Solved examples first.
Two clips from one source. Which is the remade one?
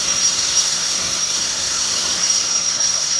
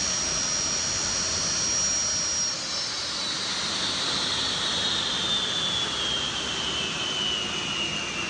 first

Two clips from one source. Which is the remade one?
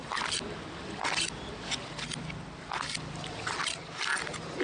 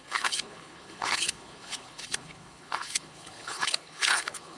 second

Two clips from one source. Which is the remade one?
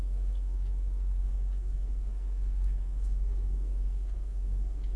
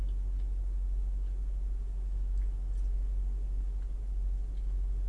first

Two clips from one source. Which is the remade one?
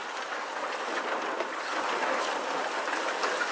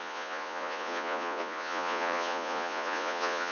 second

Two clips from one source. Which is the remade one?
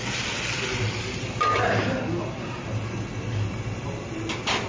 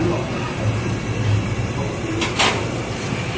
second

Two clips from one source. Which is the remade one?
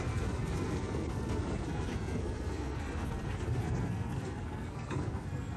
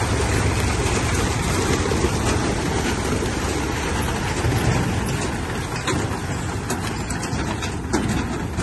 first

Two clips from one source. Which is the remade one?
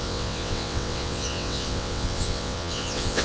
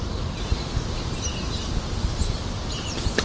first